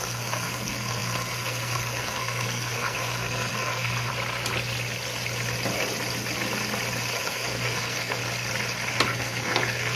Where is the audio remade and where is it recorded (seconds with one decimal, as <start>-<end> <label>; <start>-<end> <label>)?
0.0-4.1 remade; 4.1-7.2 recorded; 7.2-8.2 remade; 8.2-8.9 recorded; 8.9-10.0 remade